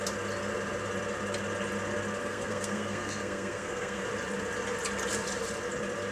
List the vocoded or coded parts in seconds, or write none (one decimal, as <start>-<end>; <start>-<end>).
2.2-4.0